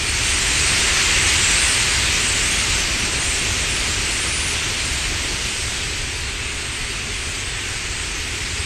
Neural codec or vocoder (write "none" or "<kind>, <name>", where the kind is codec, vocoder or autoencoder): none